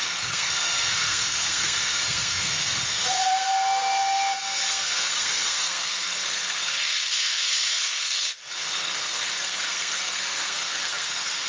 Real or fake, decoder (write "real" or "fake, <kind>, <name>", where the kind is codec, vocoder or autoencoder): fake, codec, SNAC